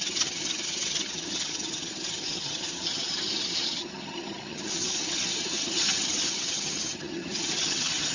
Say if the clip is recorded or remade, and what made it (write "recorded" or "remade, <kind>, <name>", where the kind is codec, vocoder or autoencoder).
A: remade, vocoder, HiFi-GAN